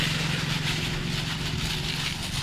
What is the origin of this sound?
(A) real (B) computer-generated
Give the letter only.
A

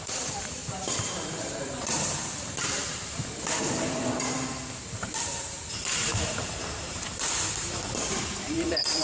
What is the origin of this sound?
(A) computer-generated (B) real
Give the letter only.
A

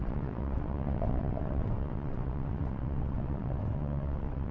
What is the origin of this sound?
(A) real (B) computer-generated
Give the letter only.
B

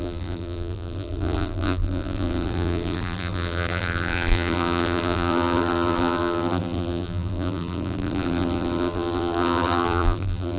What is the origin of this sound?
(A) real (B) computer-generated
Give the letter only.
B